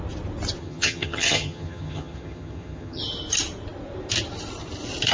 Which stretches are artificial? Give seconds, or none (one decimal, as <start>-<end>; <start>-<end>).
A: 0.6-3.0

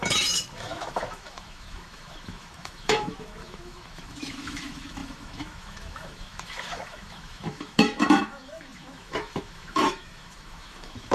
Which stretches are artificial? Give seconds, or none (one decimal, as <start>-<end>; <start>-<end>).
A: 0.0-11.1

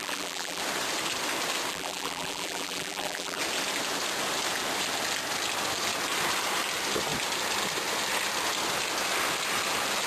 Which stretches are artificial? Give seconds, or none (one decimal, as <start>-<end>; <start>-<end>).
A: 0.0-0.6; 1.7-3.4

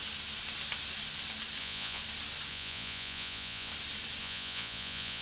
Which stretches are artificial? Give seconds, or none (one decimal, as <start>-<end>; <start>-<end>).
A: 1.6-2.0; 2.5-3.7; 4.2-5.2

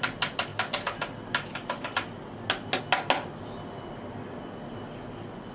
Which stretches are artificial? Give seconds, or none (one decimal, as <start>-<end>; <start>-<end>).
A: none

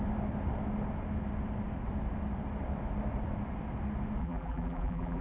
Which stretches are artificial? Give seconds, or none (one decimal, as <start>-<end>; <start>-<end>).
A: 4.2-5.2